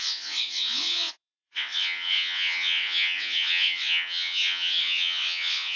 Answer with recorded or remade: remade